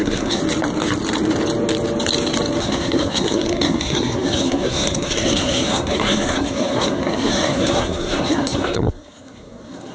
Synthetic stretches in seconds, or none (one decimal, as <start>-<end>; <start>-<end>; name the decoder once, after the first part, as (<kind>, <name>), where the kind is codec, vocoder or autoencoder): 0.0-0.4 (codec, SNAC); 2.6-9.9